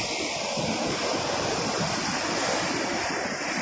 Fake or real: real